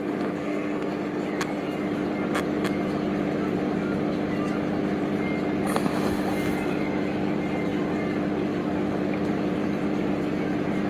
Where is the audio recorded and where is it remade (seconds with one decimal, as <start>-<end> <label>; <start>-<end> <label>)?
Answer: 0.0-0.4 recorded; 0.4-0.9 remade; 0.9-10.9 recorded